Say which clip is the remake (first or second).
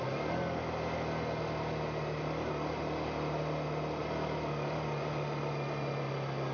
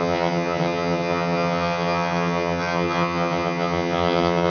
second